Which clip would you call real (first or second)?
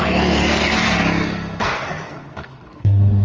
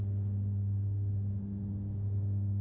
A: second